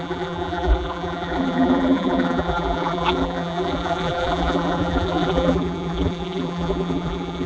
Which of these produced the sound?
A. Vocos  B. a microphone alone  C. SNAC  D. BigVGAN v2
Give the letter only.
D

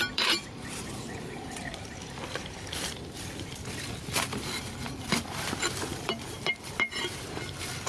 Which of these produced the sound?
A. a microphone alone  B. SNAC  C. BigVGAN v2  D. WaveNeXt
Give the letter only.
C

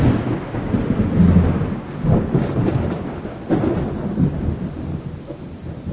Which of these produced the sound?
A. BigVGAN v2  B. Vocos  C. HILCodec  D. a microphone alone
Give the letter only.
D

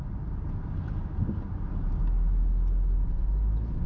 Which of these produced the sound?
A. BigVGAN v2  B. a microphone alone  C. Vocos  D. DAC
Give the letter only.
B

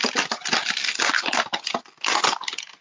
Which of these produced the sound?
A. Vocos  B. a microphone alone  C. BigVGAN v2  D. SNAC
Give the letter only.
B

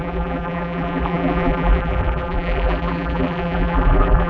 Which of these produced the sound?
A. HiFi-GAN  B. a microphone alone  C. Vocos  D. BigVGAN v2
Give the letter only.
D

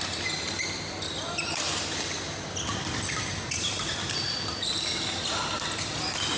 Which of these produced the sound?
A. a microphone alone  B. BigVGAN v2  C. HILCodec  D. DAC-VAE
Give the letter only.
A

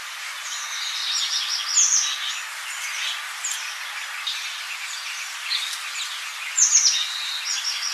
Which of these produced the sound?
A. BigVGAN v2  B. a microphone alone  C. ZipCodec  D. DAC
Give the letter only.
B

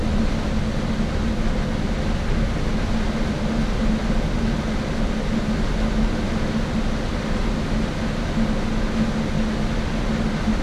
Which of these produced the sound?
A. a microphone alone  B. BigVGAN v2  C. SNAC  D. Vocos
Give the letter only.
A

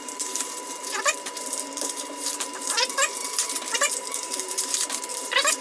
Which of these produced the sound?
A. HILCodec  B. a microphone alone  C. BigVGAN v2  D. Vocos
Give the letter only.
C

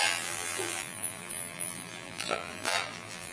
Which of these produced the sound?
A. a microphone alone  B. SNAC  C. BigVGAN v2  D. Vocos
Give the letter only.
C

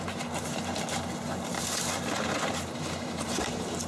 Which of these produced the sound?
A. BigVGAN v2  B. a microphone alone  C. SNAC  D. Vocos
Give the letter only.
A